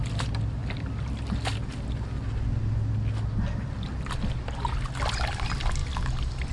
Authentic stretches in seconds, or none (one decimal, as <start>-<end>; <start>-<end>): 0.0-6.5